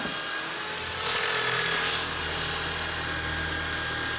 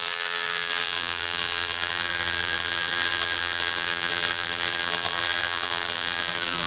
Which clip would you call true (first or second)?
first